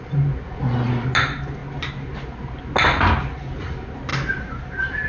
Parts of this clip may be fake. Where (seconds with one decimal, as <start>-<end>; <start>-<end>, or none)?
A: none